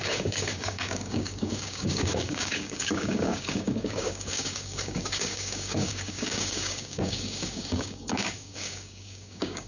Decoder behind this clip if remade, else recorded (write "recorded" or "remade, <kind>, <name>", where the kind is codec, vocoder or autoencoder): remade, codec, DAC